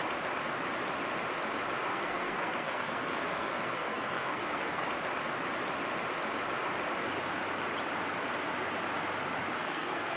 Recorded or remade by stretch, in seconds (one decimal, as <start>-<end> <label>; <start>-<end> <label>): 0.0-1.9 recorded; 1.9-4.9 remade; 4.9-9.6 recorded; 9.6-10.2 remade